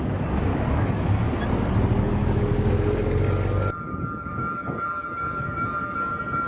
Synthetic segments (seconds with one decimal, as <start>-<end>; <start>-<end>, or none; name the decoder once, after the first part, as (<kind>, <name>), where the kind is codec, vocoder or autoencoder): 0.5-1.4 (codec, DAC); 2.2-6.1